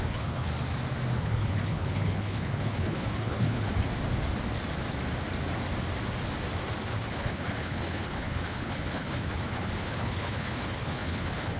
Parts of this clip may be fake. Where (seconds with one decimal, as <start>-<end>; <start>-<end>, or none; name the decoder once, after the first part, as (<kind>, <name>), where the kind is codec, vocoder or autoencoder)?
0.0-0.5 (codec, HILCodec); 1.2-3.7; 6.8-11.6